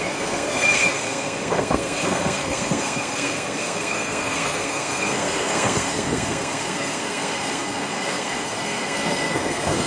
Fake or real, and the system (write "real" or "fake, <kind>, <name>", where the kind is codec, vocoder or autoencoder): fake, codec, SNAC